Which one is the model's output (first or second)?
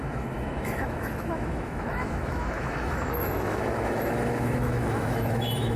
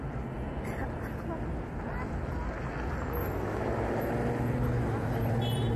first